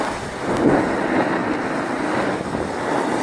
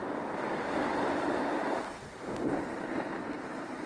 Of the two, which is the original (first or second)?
first